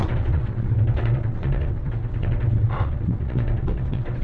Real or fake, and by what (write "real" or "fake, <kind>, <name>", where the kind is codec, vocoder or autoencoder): fake, vocoder, WaveNeXt